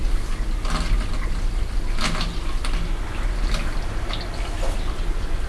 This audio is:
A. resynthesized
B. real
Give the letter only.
B